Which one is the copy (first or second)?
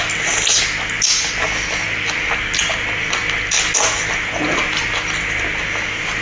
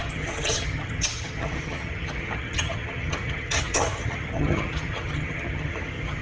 second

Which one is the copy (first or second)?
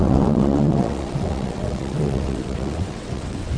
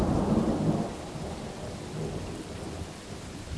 first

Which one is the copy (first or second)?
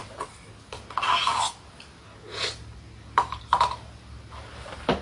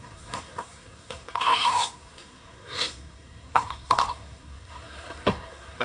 second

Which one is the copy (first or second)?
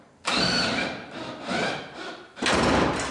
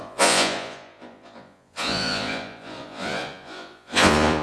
second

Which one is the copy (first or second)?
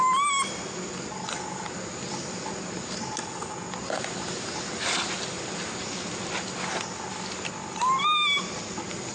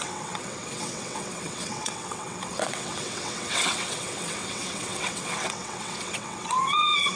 second